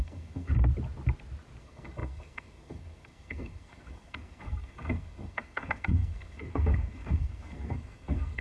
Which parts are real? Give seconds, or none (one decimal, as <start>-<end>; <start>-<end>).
0.5-1.6